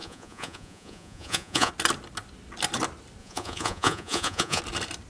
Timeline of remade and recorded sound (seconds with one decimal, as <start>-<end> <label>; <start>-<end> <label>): 0.0-1.7 remade; 1.7-3.2 recorded; 3.2-4.6 remade; 4.6-5.1 recorded